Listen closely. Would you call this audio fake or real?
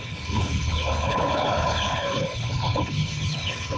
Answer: fake